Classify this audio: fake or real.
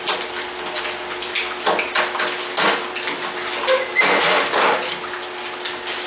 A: real